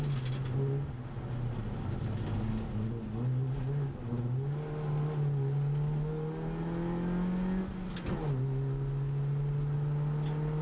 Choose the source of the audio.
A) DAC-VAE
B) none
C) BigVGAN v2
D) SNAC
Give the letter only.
B